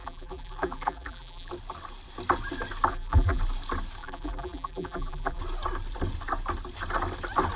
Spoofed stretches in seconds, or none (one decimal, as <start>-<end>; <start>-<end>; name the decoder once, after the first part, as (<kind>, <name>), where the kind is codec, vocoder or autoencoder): 0.0-1.5 (vocoder, BigVGAN v2); 2.9-3.4; 4.0-5.4